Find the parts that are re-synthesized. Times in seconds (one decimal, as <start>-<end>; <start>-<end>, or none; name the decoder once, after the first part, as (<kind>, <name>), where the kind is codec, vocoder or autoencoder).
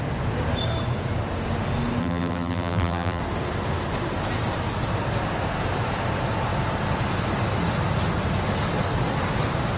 2.0-3.2 (vocoder, BigVGAN v2)